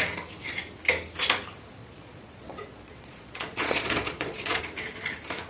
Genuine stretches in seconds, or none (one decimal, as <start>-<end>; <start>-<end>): 0.0-1.8; 4.6-5.5